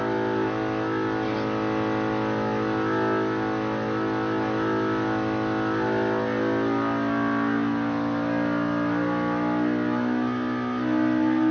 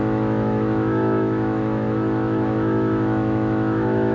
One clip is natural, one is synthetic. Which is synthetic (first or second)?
second